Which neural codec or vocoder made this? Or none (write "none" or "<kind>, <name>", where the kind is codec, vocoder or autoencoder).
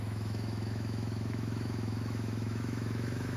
autoencoder, DAC-VAE